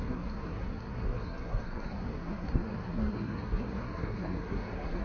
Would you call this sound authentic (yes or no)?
no